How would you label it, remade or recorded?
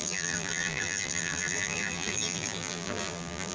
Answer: remade